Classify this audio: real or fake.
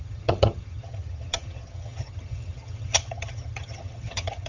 fake